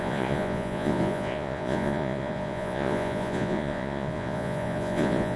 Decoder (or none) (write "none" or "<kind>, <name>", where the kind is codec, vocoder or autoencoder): vocoder, Vocos